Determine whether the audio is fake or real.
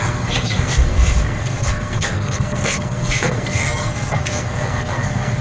fake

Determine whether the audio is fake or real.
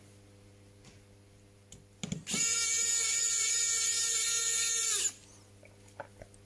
real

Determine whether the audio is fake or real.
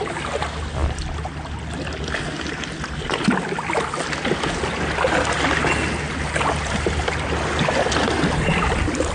real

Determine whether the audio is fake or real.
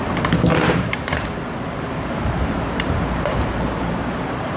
fake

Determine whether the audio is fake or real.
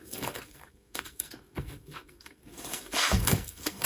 fake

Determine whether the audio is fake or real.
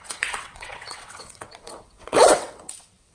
fake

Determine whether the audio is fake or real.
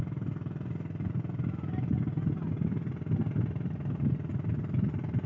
real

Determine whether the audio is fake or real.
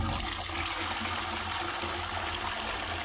real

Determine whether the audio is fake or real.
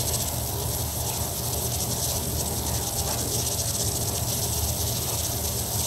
real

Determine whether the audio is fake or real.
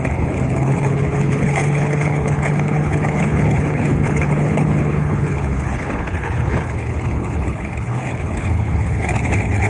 fake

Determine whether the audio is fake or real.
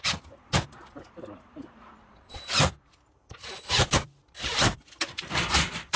fake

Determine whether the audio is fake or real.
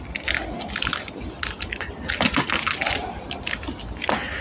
real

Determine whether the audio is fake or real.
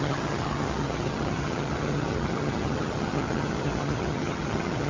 fake